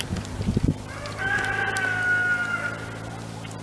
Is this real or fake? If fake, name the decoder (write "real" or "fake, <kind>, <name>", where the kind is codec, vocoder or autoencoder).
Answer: real